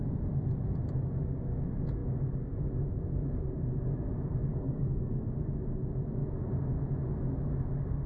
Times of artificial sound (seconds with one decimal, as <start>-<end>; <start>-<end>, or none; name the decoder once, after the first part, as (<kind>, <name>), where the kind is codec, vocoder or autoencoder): 4.5-5.1 (codec, SNAC)